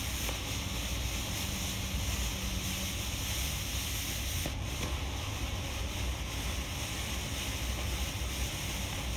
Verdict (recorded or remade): recorded